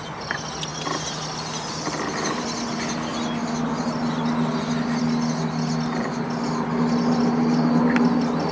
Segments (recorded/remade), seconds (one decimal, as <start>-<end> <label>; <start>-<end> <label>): 0.0-8.5 recorded